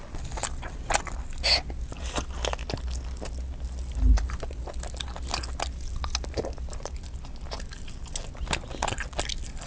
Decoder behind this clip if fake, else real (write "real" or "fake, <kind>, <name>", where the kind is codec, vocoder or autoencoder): real